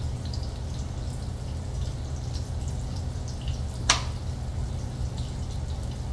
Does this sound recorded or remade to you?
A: recorded